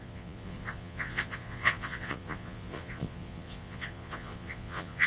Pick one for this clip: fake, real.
fake